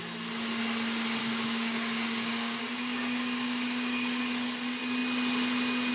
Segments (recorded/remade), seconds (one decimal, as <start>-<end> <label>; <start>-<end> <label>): 0.0-1.2 recorded; 1.2-4.2 remade; 4.2-5.9 recorded

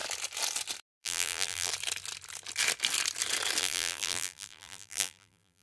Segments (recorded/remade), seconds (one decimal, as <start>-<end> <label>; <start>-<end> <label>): 0.0-1.0 recorded; 1.0-1.7 remade; 1.7-3.6 recorded; 3.6-5.6 remade

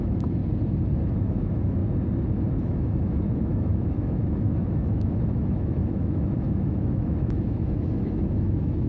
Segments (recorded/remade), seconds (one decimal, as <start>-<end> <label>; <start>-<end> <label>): 0.0-0.4 remade; 0.4-1.1 recorded; 1.1-1.8 remade; 1.8-2.6 recorded; 2.6-8.9 remade

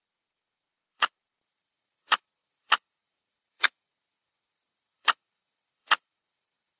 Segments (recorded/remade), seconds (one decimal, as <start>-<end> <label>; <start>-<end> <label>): 0.0-6.8 remade

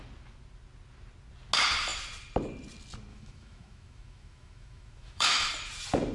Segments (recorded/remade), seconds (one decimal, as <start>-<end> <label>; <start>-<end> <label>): 0.0-3.1 recorded; 3.1-5.5 remade; 5.5-6.1 recorded

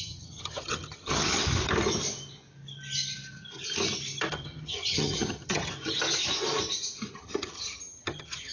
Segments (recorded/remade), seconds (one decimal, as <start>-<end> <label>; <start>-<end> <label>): 0.0-1.4 remade; 1.4-4.3 recorded; 4.3-5.7 remade; 5.7-7.2 recorded; 7.2-8.5 remade